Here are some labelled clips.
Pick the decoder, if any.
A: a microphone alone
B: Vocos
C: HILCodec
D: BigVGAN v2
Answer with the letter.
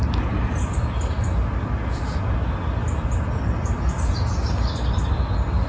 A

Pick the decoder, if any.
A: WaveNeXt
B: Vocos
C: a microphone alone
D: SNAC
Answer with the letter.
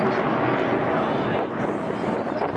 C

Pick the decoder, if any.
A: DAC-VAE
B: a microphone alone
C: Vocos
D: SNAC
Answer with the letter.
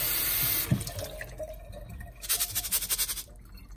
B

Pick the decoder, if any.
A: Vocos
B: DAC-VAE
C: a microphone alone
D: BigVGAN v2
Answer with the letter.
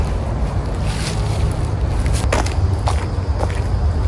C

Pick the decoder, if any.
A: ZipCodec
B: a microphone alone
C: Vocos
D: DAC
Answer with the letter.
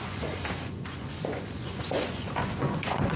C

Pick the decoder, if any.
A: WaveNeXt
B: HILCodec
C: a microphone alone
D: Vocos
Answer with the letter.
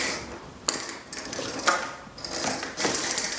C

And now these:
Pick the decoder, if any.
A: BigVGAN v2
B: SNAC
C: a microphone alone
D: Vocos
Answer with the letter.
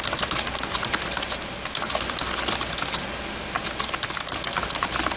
C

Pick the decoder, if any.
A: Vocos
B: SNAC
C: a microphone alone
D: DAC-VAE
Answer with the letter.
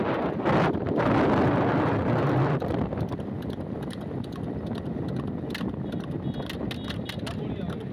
C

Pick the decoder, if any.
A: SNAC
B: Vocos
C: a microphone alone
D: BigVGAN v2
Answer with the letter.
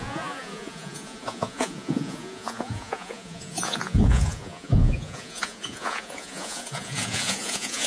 B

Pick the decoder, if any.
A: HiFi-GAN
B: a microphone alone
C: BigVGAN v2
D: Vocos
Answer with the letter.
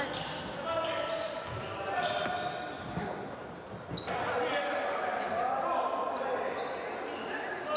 B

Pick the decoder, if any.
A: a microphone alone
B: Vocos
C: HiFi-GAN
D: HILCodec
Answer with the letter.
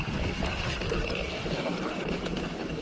A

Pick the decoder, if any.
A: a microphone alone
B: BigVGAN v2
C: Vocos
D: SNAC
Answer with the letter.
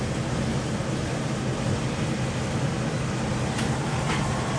A